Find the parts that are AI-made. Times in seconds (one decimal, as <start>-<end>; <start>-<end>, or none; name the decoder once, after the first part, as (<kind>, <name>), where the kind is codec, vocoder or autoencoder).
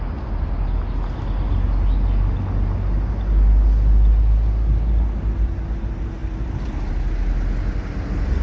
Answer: none